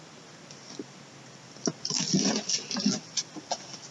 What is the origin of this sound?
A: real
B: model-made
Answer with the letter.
A